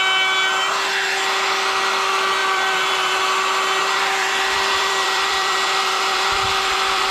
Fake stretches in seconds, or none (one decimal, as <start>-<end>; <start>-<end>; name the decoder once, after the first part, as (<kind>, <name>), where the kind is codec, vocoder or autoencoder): 2.4-3.2 (vocoder, BigVGAN v2); 3.8-7.1